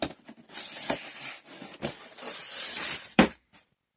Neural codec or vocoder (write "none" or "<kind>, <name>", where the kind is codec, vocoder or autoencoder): vocoder, BigVGAN v2